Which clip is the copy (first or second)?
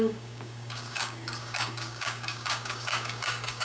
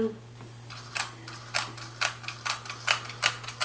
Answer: first